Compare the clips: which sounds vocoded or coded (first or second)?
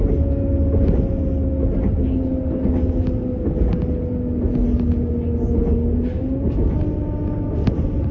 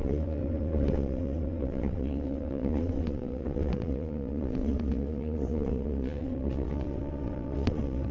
second